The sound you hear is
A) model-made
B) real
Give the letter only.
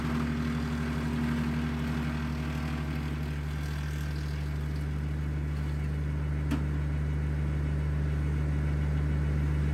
B